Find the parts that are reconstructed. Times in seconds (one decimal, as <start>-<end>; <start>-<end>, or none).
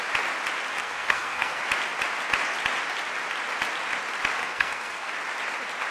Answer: 0.8-1.6; 4.4-5.1